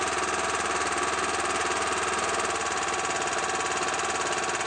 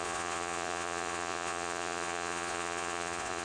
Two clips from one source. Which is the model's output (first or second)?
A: second